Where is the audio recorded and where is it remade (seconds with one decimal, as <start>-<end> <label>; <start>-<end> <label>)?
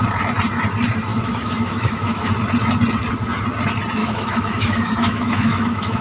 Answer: 0.0-1.1 recorded; 1.1-2.3 remade; 2.3-4.0 recorded; 4.0-6.0 remade